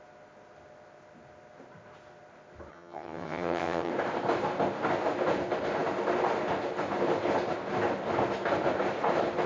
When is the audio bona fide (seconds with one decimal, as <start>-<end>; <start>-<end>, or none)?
0.0-2.7; 3.9-9.5